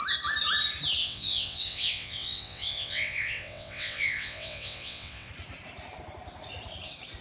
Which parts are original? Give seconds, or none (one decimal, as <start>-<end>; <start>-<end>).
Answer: 0.0-1.0; 5.3-7.2